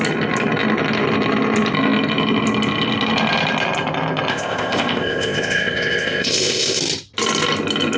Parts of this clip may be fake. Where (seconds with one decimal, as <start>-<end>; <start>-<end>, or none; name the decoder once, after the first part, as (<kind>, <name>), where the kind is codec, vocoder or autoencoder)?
4.3-6.8 (codec, ZipCodec)